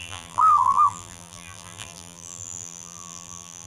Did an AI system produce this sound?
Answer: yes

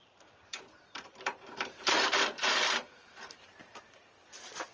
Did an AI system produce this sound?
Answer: yes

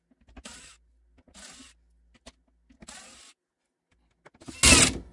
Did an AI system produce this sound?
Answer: no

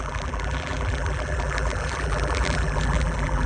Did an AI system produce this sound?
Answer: yes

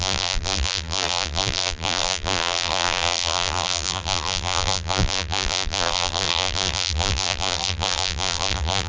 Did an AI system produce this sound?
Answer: yes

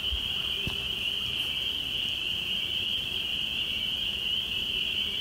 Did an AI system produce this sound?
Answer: yes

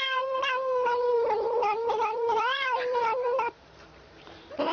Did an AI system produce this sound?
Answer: yes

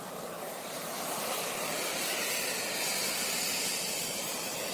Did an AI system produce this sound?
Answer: yes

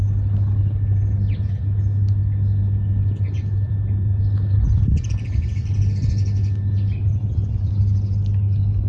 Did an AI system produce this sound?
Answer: no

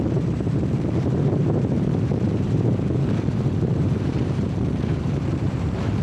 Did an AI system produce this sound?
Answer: yes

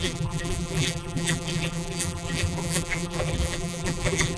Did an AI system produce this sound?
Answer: yes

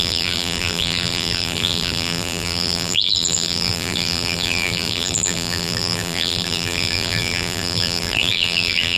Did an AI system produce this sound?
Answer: yes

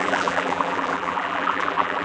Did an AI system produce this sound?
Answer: yes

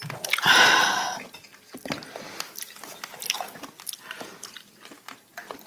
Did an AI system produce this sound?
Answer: no